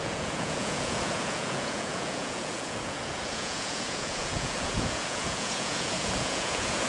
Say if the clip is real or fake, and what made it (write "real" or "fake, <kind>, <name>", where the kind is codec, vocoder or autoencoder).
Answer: fake, vocoder, Vocos